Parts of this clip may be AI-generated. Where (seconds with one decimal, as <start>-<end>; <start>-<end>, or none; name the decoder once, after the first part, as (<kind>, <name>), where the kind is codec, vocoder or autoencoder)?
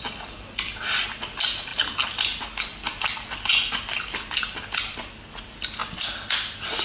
none